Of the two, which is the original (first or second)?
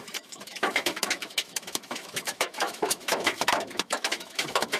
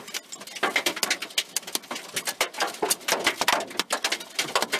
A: second